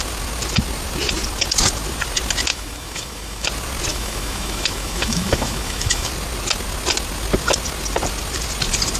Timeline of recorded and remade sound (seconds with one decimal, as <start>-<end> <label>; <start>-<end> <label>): 0.0-2.5 recorded; 2.5-3.5 remade; 3.5-3.9 recorded; 3.9-6.1 remade; 6.1-9.0 recorded